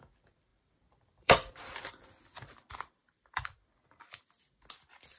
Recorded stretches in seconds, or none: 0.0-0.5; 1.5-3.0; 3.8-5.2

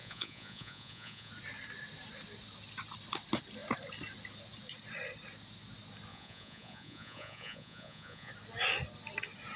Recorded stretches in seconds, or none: 1.3-6.1; 8.3-9.6

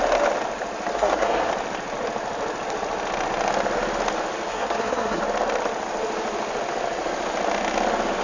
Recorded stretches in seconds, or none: 0.0-0.9; 1.5-4.5; 5.2-8.2

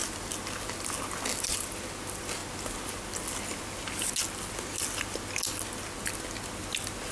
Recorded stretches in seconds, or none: 0.0-7.1

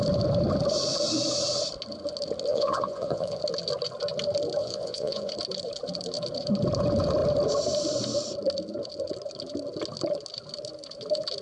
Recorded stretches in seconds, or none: 0.0-2.5; 3.4-4.6; 5.3-11.4

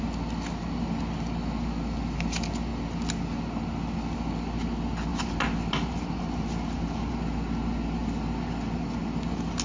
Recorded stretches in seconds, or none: 0.0-5.1; 7.1-9.6

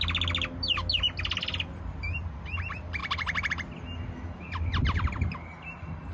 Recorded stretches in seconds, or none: 0.0-6.1